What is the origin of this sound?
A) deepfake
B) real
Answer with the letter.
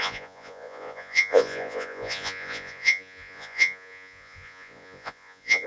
A